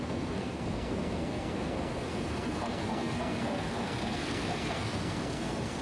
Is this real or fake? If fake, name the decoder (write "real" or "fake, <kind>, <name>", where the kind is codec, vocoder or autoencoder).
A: fake, codec, SNAC